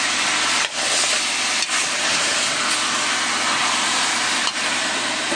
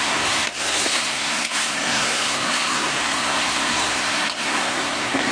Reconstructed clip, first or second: second